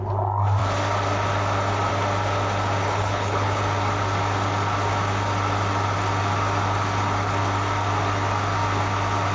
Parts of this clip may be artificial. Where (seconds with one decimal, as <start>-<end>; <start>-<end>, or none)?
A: 2.8-3.6